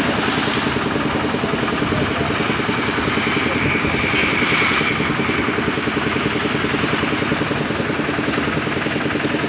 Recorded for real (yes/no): yes